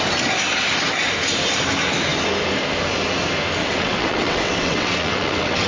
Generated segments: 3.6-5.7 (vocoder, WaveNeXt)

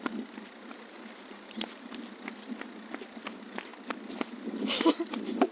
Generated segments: none

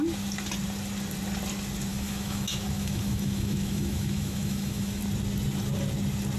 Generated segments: 1.9-5.0 (autoencoder, DAC-VAE)